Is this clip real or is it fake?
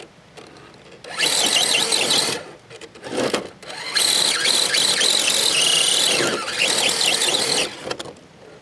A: real